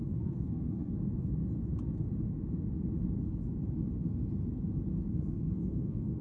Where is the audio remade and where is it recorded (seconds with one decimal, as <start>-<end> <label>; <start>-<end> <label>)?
0.0-1.4 remade; 1.4-5.1 recorded; 5.1-6.2 remade